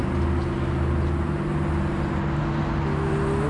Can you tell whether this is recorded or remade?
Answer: recorded